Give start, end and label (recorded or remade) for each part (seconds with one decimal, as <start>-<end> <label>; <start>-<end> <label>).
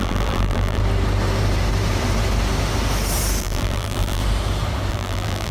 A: 0.0-0.8 remade; 0.8-3.4 recorded; 3.4-4.2 remade; 4.2-4.9 recorded; 4.9-5.5 remade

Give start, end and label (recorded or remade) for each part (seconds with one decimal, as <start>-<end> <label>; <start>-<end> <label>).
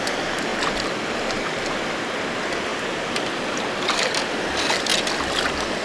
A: 0.0-0.5 recorded; 0.5-1.9 remade; 1.9-4.9 recorded; 4.9-5.8 remade